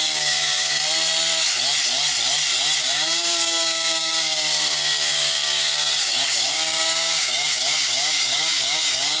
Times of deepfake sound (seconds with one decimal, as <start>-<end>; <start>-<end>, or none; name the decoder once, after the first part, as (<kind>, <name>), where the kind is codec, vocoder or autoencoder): 0.0-0.8 (codec, DAC); 2.8-9.2